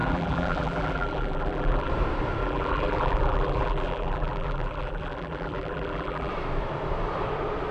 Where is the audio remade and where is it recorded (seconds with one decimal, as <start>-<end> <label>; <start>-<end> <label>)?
0.0-1.9 remade; 1.9-2.4 recorded; 2.4-6.3 remade; 6.3-7.7 recorded